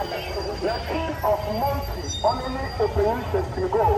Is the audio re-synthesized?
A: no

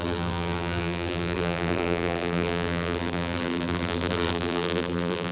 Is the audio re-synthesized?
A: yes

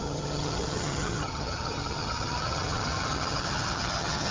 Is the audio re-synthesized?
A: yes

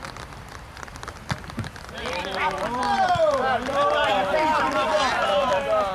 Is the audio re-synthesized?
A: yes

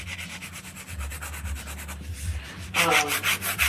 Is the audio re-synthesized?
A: no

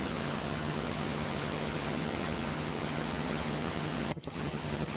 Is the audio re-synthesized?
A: yes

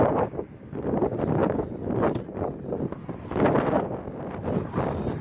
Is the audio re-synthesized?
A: yes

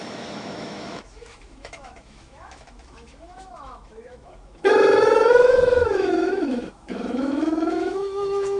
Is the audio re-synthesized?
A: yes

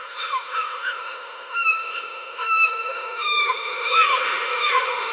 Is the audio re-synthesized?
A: yes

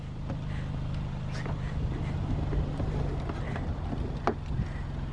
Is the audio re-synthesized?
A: no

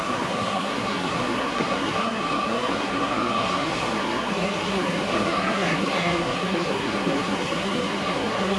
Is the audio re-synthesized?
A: yes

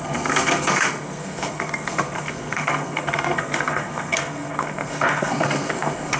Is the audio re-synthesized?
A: yes